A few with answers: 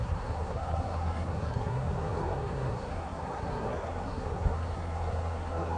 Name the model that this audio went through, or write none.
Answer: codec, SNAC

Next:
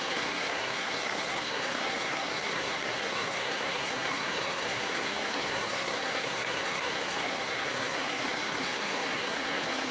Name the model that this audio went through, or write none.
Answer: codec, SNAC